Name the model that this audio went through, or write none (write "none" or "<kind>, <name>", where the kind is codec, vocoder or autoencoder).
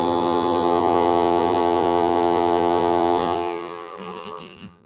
vocoder, BigVGAN v2